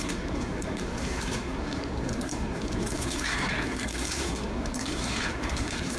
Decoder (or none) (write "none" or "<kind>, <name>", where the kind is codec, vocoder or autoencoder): codec, SNAC